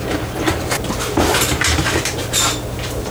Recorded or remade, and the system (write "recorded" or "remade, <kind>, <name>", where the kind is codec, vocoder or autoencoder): remade, vocoder, BigVGAN v2